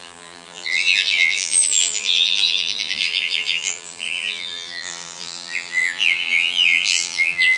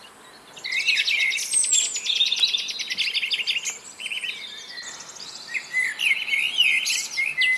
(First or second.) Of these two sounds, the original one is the second